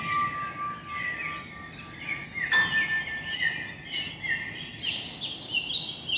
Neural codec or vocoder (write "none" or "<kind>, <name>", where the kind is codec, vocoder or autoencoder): none